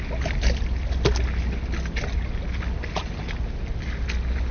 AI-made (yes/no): no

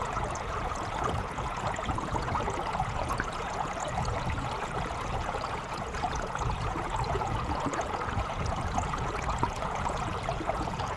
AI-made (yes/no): yes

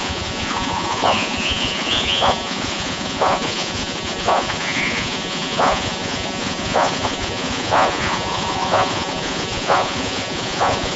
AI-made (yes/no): yes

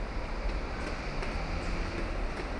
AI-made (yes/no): no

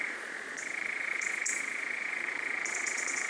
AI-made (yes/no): yes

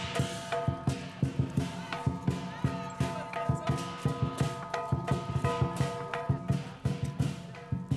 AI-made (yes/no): no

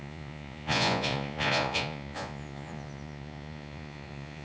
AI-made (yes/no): yes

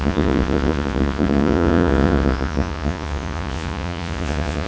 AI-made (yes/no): yes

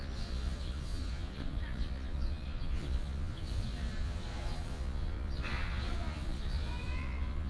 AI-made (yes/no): yes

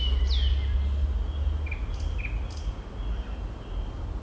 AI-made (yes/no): no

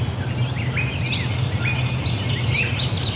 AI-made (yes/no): no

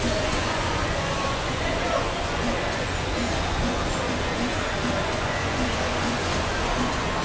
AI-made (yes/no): yes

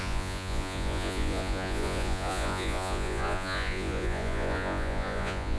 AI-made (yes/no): yes